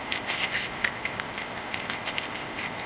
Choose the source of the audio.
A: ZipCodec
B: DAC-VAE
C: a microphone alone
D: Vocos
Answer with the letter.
A